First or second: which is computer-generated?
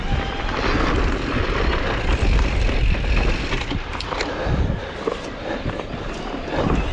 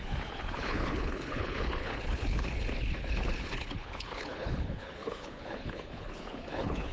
second